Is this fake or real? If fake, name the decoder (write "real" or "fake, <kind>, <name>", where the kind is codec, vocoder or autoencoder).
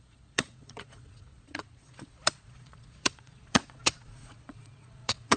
fake, vocoder, Vocos